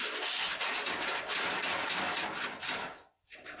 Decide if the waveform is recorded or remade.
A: recorded